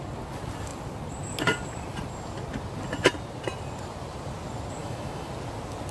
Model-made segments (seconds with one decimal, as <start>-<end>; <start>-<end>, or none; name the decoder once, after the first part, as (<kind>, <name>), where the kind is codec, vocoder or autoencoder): 4.8-5.3 (autoencoder, DAC-VAE)